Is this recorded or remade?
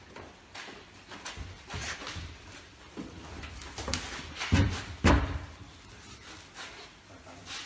recorded